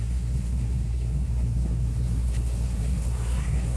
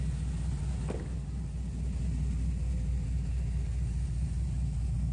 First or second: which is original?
second